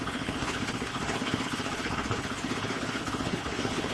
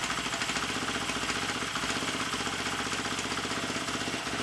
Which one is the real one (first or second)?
second